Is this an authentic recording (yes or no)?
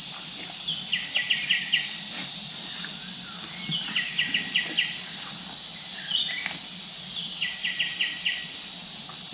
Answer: yes